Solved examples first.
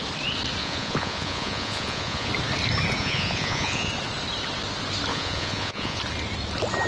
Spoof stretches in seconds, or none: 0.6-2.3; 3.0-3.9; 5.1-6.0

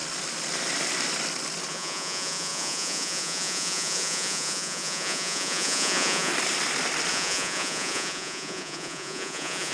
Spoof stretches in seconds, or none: 1.7-6.3; 7.1-9.7

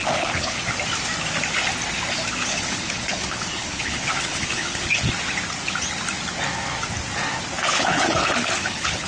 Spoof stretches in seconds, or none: 0.0-0.6; 2.5-5.1; 7.7-9.1

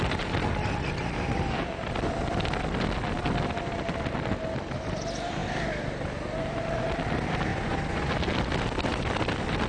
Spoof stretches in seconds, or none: 7.5-8.1

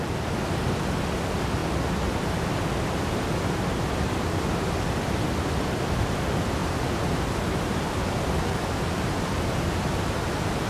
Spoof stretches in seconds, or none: none